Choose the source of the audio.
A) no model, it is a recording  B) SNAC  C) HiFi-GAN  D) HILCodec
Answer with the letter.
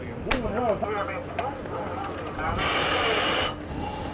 A